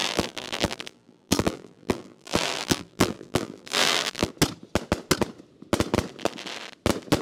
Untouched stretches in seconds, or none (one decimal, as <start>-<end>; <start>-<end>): 4.3-7.2